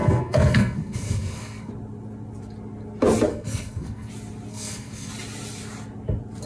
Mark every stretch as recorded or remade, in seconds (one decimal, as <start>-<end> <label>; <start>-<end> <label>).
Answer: 0.0-1.7 remade; 1.7-3.3 recorded; 3.3-4.1 remade; 4.1-4.5 recorded; 4.5-5.1 remade; 5.1-6.5 recorded